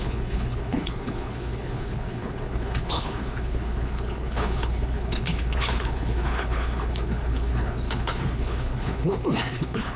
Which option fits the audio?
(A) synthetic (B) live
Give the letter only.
A